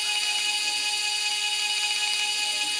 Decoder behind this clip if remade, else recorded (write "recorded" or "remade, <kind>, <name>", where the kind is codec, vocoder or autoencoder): recorded